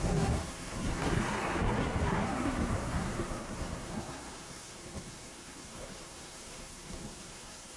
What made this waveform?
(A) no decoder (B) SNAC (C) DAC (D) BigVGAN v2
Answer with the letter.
B